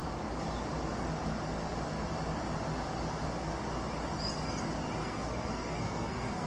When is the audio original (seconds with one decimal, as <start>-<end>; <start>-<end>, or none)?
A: 0.0-5.0